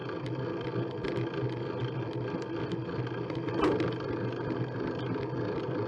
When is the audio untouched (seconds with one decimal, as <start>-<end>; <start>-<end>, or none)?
0.0-5.9